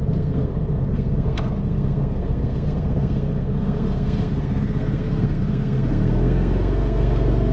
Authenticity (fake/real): fake